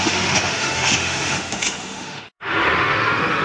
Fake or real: fake